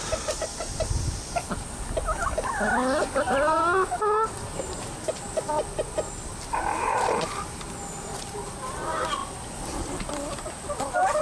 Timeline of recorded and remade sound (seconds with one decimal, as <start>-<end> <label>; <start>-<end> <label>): 0.0-11.2 recorded